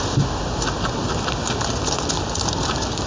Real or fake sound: real